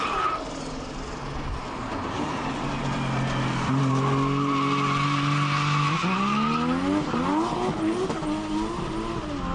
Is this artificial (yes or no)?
no